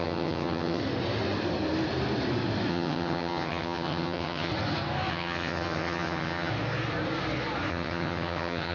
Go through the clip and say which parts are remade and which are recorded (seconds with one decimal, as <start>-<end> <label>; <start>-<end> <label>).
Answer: 0.0-0.8 remade; 0.8-2.7 recorded; 2.7-4.5 remade; 4.5-5.1 recorded; 5.1-6.5 remade; 6.5-7.7 recorded; 7.7-8.7 remade